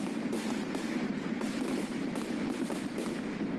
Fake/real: real